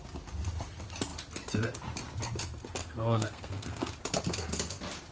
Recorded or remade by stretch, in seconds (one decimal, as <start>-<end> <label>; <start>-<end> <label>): 0.0-2.8 recorded; 2.8-3.9 remade; 3.9-5.1 recorded